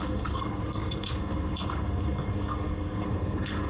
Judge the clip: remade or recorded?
remade